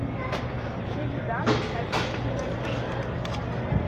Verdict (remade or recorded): recorded